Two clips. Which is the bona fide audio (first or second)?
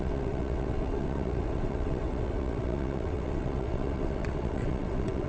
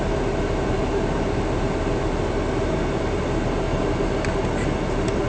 second